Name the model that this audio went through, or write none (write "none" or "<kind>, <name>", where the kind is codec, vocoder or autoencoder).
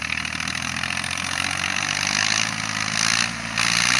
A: none